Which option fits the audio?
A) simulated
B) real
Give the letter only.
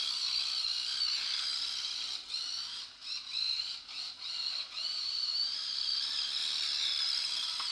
B